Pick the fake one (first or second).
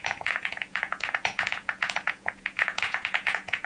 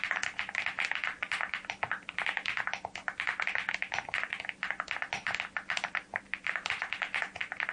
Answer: first